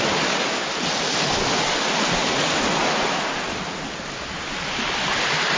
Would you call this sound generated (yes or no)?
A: no